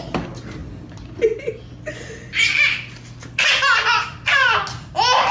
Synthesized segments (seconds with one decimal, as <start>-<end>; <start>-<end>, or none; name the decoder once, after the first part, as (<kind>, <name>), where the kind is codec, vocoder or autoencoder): none